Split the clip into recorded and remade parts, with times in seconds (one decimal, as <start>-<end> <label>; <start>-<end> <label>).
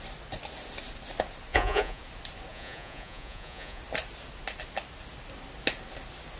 0.0-1.5 recorded; 1.5-2.0 remade; 2.0-2.5 recorded; 2.5-3.8 remade; 3.8-6.4 recorded